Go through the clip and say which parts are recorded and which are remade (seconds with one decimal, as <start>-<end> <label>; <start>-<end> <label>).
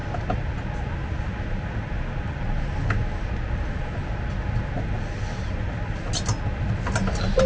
0.0-7.5 recorded